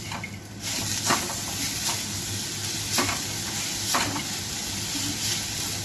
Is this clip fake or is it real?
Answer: real